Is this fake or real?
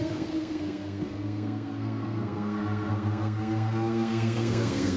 fake